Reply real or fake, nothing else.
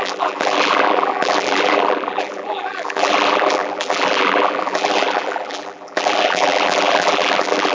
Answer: fake